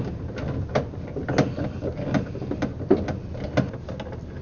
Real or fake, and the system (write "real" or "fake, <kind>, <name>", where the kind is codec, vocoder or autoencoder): real